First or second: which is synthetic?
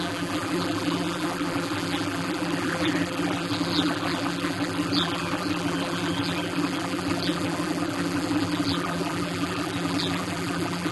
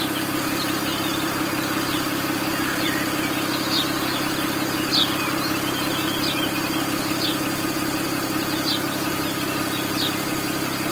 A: first